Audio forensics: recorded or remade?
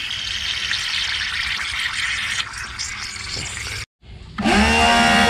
recorded